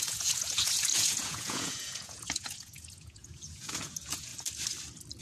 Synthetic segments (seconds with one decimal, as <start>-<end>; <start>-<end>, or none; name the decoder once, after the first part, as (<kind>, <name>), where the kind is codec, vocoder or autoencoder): 0.0-4.3 (vocoder, Vocos)

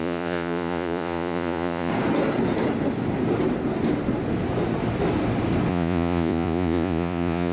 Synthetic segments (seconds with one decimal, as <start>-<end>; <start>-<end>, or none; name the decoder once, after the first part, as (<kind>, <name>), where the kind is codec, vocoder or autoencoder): 0.0-1.9 (vocoder, Vocos); 5.7-7.5

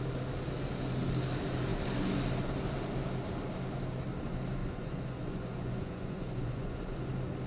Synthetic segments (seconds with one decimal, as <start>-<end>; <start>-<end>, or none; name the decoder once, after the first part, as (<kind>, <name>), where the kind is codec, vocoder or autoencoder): 4.6-7.1 (vocoder, Vocos)

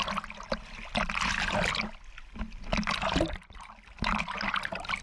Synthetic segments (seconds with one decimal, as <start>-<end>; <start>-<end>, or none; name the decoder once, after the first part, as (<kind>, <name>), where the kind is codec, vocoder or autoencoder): none

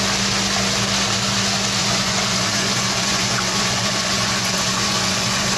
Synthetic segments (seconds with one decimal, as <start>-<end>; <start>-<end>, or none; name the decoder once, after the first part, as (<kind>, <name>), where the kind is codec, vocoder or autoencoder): 1.8-5.6 (vocoder, Vocos)